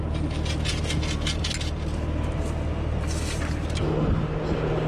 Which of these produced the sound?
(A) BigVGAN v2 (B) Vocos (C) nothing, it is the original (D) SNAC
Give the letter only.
C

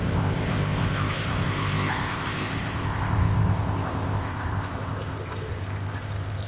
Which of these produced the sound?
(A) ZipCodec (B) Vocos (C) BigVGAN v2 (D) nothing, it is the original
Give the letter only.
A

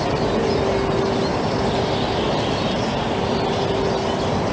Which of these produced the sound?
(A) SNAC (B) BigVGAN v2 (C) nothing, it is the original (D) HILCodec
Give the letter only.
C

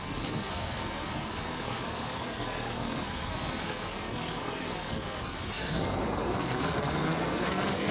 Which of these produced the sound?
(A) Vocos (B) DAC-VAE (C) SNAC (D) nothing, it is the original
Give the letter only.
C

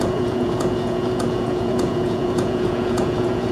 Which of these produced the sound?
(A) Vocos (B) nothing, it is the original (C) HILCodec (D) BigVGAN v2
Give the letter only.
A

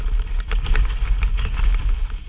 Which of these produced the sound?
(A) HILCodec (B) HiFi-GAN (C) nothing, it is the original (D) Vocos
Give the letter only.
C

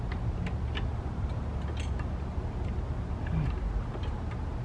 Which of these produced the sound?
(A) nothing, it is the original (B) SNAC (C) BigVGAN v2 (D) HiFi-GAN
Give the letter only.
A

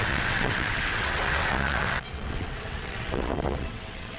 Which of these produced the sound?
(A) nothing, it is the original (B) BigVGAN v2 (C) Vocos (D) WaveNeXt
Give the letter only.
D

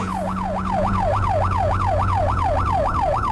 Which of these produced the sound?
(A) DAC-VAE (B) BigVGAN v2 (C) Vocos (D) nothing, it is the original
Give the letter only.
C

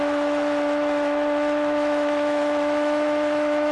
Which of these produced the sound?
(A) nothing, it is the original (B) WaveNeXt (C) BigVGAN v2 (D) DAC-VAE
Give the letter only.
D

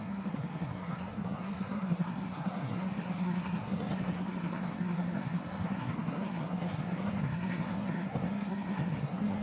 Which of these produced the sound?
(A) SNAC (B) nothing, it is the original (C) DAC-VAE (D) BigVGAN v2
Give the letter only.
A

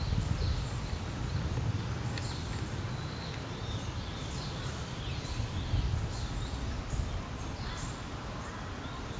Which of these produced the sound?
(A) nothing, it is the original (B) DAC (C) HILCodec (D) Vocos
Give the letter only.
A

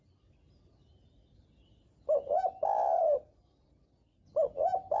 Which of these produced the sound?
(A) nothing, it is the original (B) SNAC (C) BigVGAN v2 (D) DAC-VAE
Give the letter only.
A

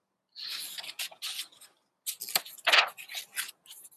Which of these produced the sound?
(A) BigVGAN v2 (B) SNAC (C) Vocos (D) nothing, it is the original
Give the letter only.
D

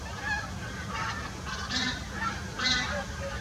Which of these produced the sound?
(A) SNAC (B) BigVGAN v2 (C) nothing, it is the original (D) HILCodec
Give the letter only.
C